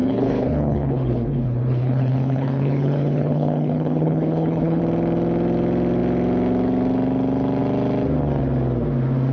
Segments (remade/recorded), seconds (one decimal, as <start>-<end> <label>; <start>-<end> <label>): 0.0-4.8 remade; 4.8-9.3 recorded